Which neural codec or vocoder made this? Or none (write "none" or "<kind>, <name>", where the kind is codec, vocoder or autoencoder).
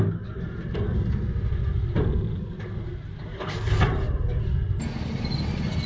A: none